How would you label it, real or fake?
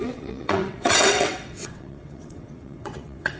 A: fake